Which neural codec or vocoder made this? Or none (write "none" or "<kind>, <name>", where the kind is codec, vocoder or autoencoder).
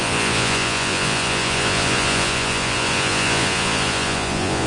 vocoder, Vocos